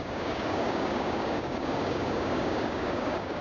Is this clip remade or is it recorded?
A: remade